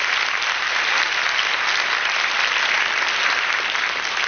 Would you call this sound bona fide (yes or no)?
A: yes